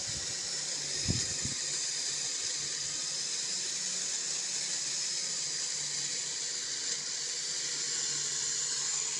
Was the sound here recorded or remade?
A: recorded